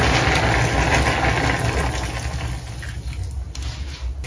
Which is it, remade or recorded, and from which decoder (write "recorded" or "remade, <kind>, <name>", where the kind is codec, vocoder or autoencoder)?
recorded